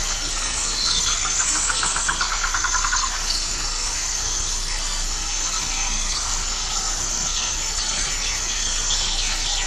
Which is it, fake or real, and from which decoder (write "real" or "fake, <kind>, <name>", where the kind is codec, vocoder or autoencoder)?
fake, codec, SNAC